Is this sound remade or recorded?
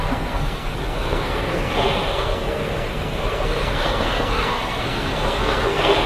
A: remade